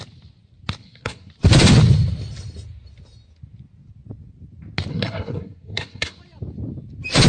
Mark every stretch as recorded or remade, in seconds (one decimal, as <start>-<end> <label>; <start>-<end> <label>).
0.0-0.8 recorded; 0.8-1.3 remade; 1.3-4.9 recorded; 4.9-6.2 remade; 6.2-7.3 recorded